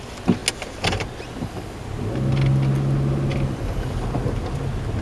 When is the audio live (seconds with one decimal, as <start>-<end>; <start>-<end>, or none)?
0.0-5.0